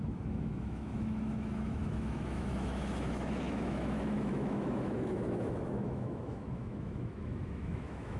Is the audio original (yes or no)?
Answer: no